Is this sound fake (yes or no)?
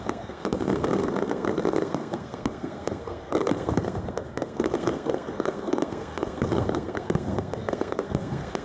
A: yes